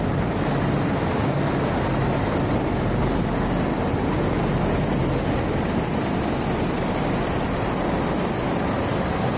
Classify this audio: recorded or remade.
recorded